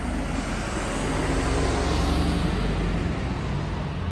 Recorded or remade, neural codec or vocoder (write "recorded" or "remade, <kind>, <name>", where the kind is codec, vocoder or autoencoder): recorded